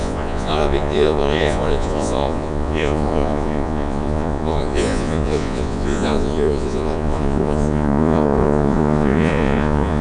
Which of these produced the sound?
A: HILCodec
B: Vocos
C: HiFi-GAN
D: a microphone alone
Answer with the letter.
B